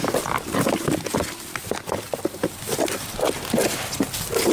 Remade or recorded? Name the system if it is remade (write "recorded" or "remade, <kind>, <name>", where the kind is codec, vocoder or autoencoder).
recorded